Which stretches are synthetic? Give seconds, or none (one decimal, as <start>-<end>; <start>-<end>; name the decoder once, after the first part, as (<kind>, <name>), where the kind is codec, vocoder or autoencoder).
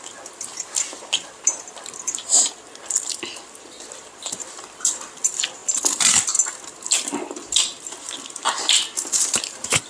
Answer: none